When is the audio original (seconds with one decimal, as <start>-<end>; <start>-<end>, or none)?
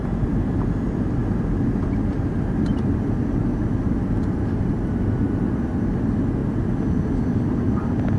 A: 0.0-8.2